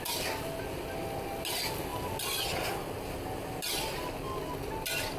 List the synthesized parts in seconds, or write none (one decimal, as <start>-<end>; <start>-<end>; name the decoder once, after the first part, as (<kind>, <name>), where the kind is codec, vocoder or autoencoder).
none